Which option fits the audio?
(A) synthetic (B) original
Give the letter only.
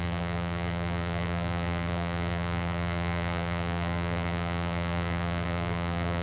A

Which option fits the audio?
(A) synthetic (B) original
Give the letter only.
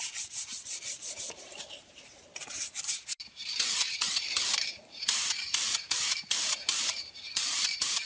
A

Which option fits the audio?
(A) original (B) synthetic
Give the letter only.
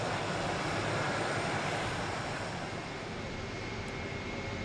A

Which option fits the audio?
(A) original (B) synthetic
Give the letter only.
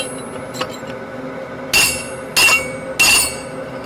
A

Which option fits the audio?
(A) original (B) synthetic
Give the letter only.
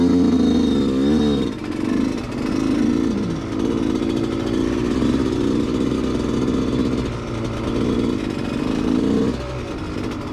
A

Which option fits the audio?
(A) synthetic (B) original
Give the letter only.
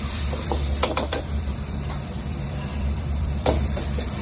A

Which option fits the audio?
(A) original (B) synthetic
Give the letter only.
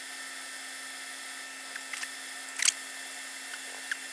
A